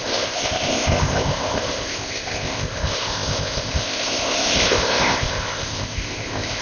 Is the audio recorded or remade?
remade